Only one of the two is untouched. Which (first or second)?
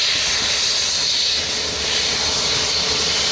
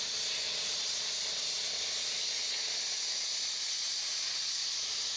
second